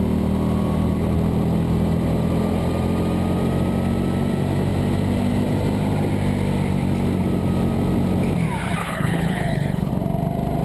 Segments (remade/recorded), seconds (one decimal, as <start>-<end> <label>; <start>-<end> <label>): 0.0-8.8 recorded; 8.8-9.9 remade; 9.9-10.6 recorded